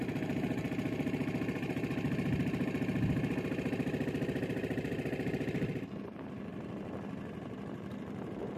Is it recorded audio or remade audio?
recorded